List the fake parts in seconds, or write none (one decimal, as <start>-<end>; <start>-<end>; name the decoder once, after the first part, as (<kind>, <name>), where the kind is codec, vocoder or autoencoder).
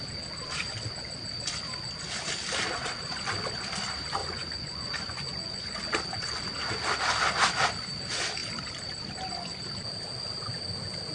4.2-5.8 (vocoder, Vocos)